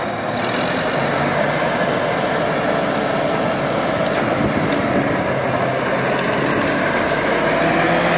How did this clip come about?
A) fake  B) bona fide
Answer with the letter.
B